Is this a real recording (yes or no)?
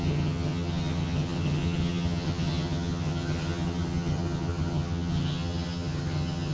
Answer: no